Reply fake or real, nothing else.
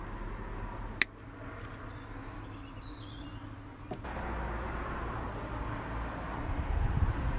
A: real